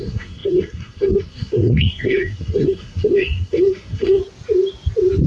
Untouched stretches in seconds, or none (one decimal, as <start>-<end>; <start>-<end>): 4.2-5.3